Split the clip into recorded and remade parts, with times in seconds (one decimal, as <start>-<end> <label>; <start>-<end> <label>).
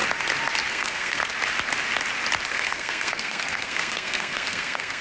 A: 0.0-0.7 recorded; 0.7-1.2 remade; 1.2-2.5 recorded; 2.5-5.0 remade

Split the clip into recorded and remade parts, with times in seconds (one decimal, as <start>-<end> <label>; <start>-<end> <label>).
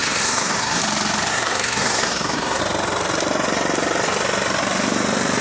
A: 0.0-0.8 remade; 0.8-1.3 recorded; 1.3-2.6 remade; 2.6-5.4 recorded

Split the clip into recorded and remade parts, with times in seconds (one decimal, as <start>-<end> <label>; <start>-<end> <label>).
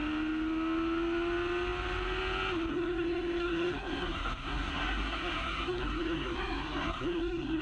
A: 0.0-2.7 recorded; 2.7-7.6 remade